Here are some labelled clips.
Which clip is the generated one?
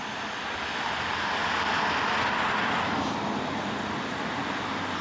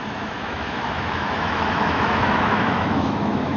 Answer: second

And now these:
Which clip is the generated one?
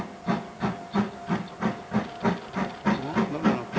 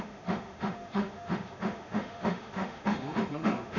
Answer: second